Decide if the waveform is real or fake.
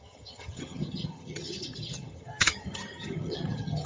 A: fake